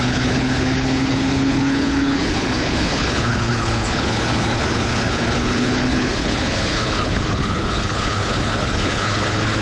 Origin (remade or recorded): remade